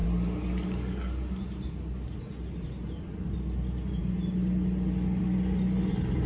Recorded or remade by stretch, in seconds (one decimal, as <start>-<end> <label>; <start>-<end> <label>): 0.0-6.3 recorded